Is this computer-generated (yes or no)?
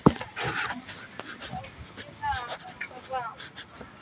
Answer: no